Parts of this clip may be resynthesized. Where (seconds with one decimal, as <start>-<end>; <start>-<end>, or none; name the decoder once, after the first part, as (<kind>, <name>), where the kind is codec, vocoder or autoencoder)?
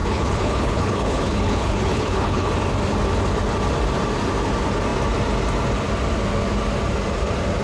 0.0-2.5 (codec, HILCodec)